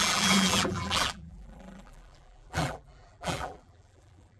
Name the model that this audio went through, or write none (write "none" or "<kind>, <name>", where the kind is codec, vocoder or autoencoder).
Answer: vocoder, BigVGAN v2